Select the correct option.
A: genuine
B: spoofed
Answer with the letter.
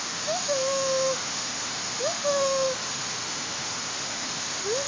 B